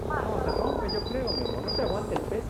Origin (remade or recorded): remade